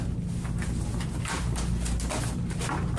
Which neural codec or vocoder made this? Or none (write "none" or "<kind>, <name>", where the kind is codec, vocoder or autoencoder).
none